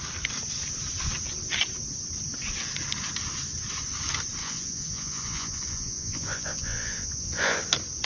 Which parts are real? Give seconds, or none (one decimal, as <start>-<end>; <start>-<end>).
0.0-4.4; 7.6-8.1